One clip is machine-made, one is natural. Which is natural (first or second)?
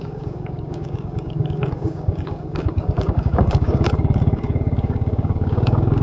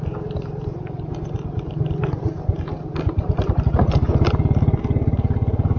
second